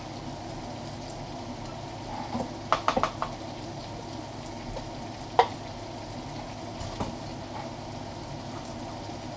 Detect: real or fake real